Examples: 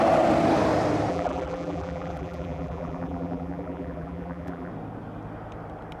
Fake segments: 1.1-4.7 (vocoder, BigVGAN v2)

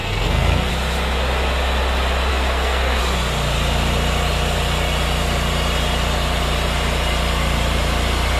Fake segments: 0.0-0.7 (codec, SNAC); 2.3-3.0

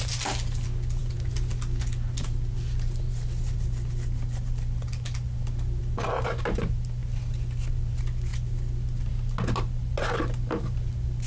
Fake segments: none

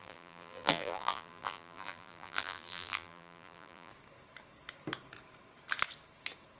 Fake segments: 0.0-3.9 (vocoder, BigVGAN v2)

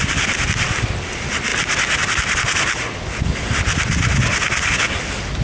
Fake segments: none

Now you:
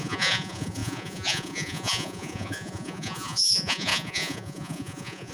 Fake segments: 0.0-5.3 (vocoder, Vocos)